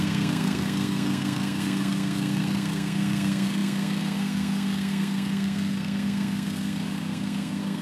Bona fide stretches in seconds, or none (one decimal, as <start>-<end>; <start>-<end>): none